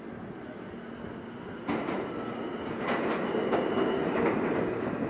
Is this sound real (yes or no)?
yes